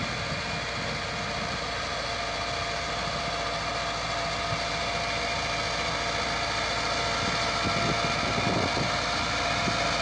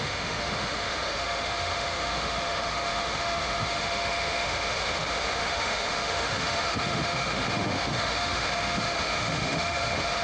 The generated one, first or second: second